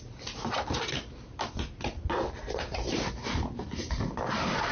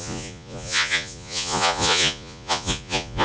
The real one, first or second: first